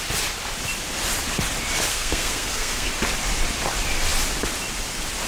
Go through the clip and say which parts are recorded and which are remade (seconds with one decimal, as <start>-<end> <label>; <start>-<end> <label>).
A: 0.0-1.9 recorded; 1.9-2.9 remade; 2.9-5.3 recorded